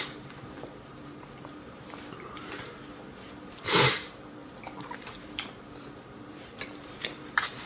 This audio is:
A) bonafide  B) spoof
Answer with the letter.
B